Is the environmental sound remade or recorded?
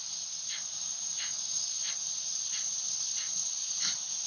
remade